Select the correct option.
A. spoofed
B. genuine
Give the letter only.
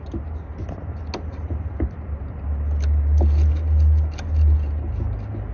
B